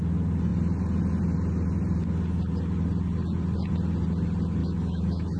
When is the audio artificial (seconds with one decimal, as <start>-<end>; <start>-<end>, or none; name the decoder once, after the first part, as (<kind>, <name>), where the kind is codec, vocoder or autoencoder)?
4.6-5.4 (autoencoder, DAC-VAE)